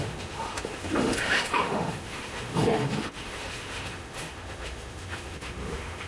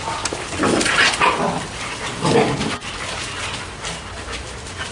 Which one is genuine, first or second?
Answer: second